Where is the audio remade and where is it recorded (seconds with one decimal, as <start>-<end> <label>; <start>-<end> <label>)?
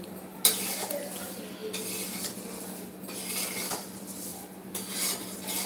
0.0-5.7 recorded